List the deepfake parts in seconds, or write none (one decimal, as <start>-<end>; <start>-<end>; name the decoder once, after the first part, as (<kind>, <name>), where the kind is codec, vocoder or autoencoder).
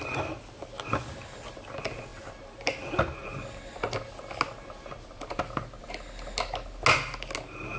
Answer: none